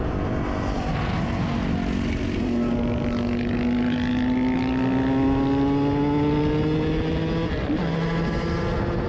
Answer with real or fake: real